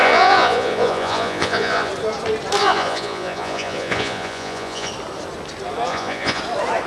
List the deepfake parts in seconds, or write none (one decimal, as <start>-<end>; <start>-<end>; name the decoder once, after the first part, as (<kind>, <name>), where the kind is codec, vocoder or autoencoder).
0.0-1.9 (vocoder, Vocos); 2.6-4.9; 5.9-6.4